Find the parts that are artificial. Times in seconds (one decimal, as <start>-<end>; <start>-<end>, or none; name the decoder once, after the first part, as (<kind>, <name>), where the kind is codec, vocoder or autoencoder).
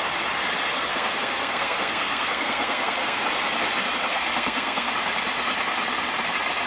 0.9-3.2 (codec, SNAC); 4.1-4.9